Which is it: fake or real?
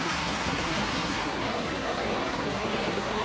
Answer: fake